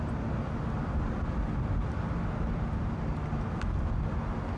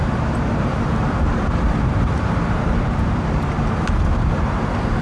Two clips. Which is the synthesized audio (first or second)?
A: second